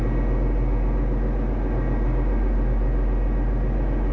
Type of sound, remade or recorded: recorded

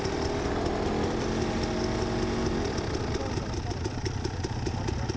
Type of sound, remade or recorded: recorded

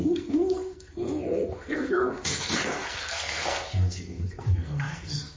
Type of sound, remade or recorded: remade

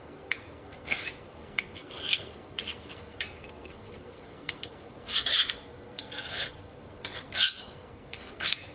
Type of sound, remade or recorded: remade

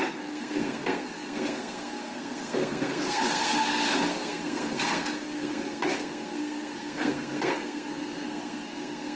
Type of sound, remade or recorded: remade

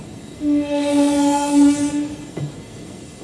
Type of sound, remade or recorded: remade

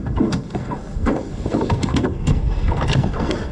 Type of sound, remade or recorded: remade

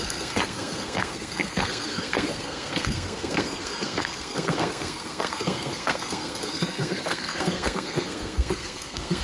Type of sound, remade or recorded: remade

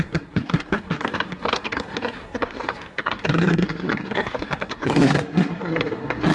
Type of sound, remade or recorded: remade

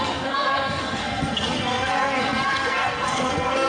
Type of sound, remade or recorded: remade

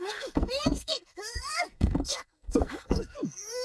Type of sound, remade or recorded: remade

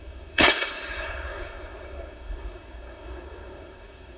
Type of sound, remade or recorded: remade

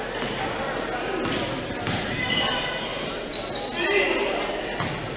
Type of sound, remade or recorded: recorded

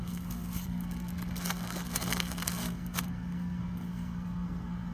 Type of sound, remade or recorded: remade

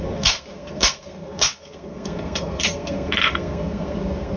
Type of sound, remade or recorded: remade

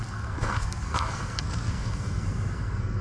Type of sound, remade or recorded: remade